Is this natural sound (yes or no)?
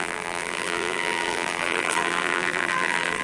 no